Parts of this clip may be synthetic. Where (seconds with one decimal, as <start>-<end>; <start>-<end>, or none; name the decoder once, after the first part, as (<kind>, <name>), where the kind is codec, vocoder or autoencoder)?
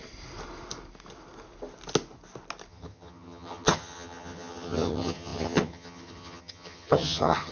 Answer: 2.7-7.5 (vocoder, HiFi-GAN)